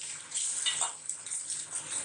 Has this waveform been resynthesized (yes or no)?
no